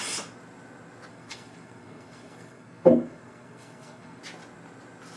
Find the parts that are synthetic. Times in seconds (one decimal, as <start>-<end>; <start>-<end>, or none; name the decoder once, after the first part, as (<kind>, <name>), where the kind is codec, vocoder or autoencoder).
1.1-4.2 (codec, SNAC)